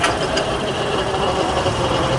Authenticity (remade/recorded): remade